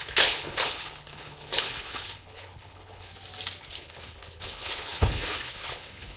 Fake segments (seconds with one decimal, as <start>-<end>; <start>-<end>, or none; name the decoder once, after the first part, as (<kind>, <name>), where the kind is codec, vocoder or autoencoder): 0.0-3.1 (codec, HILCodec); 3.6-6.2